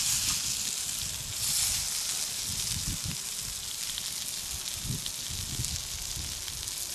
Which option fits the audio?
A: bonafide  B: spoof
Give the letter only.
A